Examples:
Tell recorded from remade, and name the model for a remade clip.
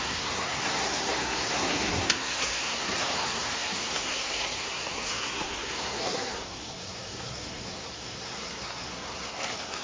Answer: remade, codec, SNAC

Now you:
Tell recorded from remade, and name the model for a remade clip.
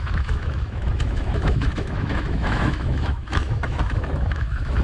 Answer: remade, autoencoder, DAC-VAE